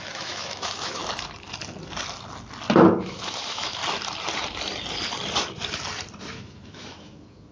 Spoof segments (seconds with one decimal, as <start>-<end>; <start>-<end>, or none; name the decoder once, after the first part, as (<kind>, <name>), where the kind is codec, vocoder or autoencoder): 0.0-1.0 (autoencoder, DAC-VAE); 3.0-3.8; 6.2-7.5